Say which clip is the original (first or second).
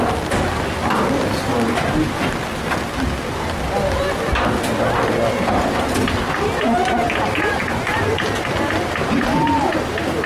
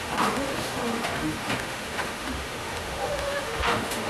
first